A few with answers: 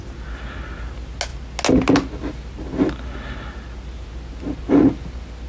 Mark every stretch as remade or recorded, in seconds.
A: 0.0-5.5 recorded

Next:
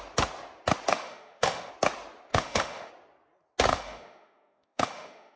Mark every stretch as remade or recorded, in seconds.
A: 0.0-0.9 recorded; 0.9-1.7 remade; 1.7-2.3 recorded; 2.3-2.9 remade; 2.9-3.7 recorded; 3.7-5.4 remade

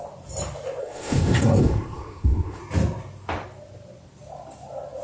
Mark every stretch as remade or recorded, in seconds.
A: 0.0-0.8 recorded; 0.8-2.6 remade; 2.6-5.0 recorded

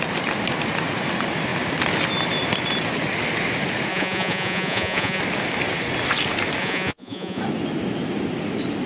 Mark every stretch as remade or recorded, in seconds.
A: 0.0-3.9 recorded; 3.9-5.2 remade; 5.2-6.6 recorded; 6.6-7.4 remade; 7.4-8.9 recorded